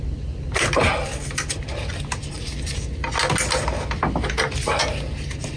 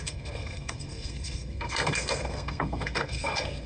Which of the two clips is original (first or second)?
first